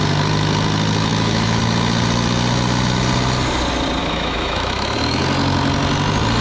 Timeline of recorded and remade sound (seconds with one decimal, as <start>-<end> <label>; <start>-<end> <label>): 0.0-1.1 recorded; 1.1-1.6 remade; 1.6-4.0 recorded; 4.0-5.2 remade; 5.2-6.4 recorded